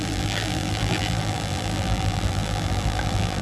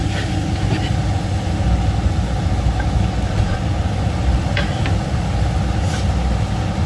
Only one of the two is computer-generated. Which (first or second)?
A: first